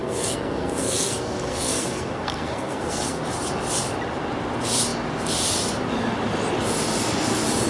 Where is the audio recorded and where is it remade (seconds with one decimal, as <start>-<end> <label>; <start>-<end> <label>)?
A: 0.0-3.2 remade; 3.2-7.7 recorded